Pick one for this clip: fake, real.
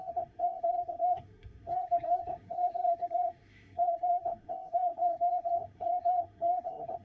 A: fake